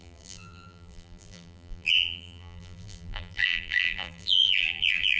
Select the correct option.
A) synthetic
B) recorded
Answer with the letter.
A